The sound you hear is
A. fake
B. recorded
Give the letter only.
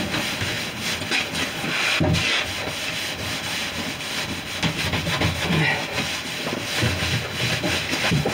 B